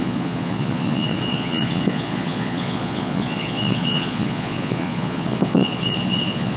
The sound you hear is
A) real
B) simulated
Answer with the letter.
B